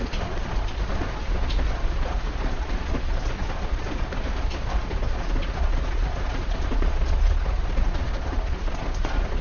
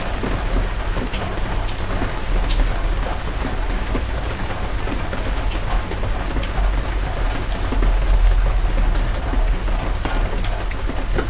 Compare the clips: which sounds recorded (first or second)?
second